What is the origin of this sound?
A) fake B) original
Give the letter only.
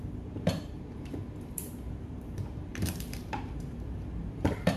A